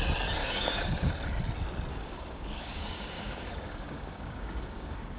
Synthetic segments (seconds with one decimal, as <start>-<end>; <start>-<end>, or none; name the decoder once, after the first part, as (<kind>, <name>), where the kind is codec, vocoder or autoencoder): 0.4-1.1 (codec, DAC); 1.9-5.2